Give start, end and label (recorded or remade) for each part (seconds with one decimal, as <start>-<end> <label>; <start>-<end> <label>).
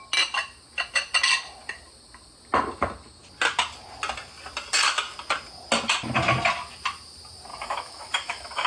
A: 0.0-7.5 recorded; 7.5-8.7 remade